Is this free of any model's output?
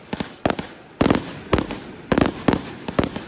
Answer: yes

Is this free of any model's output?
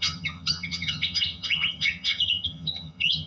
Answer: no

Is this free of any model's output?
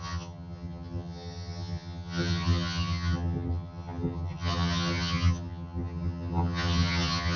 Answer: no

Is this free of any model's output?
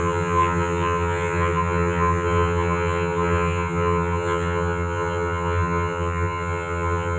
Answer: no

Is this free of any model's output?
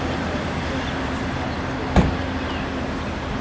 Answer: yes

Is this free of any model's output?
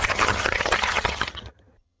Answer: no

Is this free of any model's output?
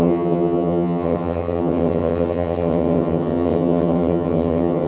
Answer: no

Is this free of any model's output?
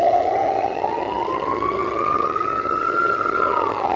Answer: no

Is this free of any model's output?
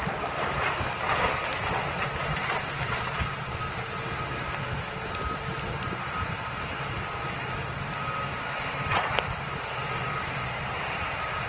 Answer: yes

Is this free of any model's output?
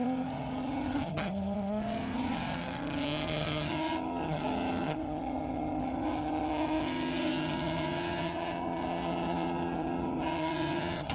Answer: no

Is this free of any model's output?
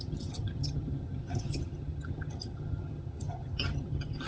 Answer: no